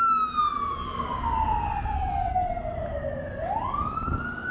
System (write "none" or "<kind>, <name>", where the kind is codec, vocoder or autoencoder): none